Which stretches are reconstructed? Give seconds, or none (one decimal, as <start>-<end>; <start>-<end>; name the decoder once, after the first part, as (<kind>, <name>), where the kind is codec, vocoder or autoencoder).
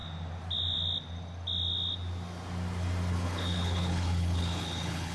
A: 3.1-5.1 (codec, HILCodec)